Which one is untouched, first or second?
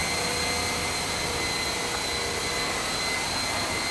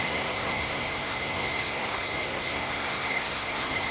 first